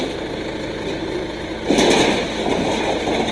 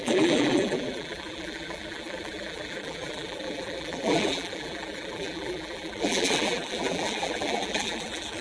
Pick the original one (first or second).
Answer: first